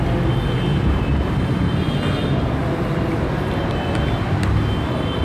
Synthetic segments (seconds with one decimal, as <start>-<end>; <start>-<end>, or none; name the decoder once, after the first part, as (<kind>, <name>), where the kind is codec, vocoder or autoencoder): 0.7-1.6 (vocoder, BigVGAN v2)